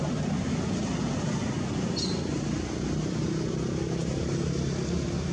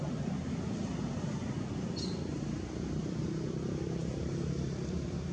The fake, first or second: second